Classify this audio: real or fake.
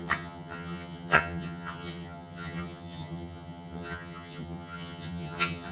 fake